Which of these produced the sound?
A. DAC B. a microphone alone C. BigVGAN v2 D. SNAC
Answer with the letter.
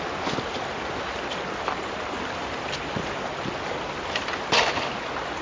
B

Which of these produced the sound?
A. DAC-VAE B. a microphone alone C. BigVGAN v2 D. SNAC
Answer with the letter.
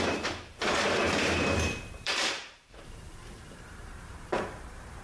C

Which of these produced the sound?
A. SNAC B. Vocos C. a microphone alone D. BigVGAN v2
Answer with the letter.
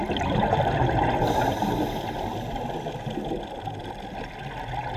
C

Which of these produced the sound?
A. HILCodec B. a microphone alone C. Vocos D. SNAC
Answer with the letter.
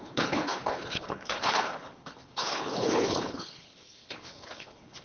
A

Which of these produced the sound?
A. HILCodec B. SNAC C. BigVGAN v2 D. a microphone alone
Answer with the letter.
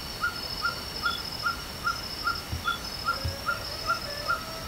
D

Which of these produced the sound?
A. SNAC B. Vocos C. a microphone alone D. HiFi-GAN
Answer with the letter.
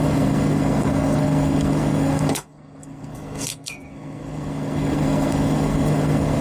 A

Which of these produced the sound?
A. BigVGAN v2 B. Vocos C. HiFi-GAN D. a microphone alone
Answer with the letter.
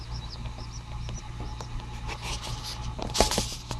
D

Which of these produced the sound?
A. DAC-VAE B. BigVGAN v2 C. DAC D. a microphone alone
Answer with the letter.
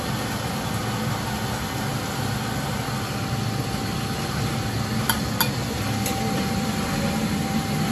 D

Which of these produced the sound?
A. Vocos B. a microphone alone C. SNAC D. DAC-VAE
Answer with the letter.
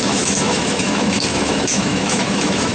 D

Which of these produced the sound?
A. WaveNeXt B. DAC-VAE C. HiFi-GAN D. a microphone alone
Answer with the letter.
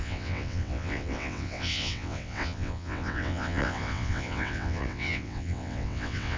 A